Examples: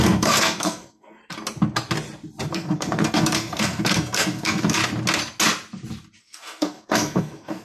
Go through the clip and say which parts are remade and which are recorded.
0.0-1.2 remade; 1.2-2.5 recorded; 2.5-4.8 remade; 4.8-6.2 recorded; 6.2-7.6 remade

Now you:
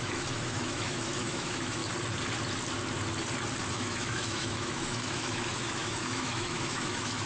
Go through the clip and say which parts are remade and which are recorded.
0.0-1.8 remade; 1.8-3.7 recorded; 3.7-7.3 remade

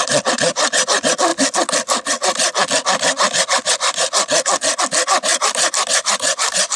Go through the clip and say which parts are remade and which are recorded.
0.0-6.8 recorded

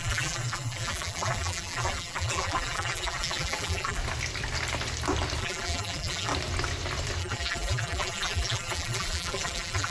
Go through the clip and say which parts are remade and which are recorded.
0.0-4.0 remade; 4.0-5.4 recorded; 5.4-6.3 remade; 6.3-7.2 recorded; 7.2-9.9 remade

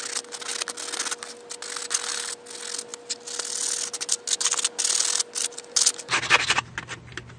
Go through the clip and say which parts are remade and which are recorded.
0.0-7.4 recorded

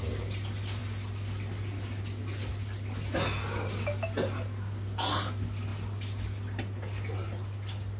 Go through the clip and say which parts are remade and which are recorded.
0.0-8.0 recorded

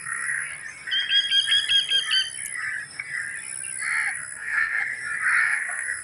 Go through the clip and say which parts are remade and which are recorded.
0.0-0.5 remade; 0.5-4.1 recorded; 4.1-4.8 remade; 4.8-5.4 recorded; 5.4-6.0 remade

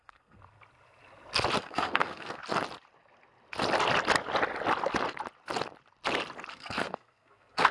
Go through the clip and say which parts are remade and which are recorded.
0.0-0.4 remade; 0.4-1.6 recorded; 1.6-2.4 remade; 2.4-6.5 recorded; 6.5-7.7 remade